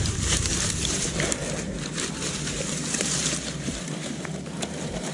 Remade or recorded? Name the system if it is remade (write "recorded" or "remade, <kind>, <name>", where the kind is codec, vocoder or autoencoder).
remade, vocoder, BigVGAN v2